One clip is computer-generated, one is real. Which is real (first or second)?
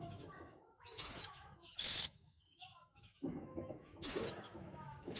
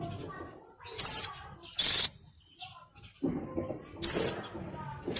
second